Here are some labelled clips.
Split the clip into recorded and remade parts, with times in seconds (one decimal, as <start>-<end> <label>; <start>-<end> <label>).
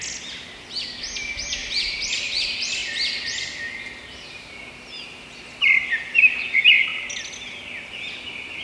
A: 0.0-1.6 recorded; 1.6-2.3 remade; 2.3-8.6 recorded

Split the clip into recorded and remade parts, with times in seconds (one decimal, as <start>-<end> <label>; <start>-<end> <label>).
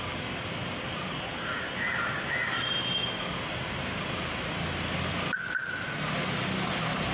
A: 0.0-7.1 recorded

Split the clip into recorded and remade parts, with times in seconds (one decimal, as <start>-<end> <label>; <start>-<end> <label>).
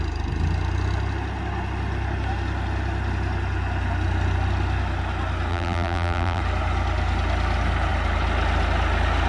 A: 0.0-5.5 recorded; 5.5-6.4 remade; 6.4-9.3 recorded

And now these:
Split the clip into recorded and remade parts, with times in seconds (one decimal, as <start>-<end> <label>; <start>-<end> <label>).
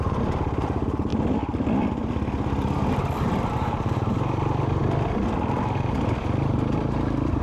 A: 0.0-1.1 remade; 1.1-2.9 recorded; 2.9-4.8 remade; 4.8-5.9 recorded; 5.9-7.4 remade